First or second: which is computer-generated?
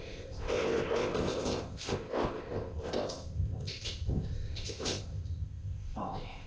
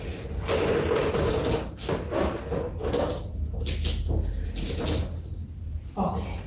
first